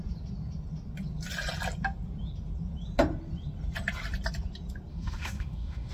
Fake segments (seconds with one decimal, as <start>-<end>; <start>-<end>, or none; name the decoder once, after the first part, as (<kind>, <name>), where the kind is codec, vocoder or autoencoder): 4.9-5.9 (autoencoder, DAC-VAE)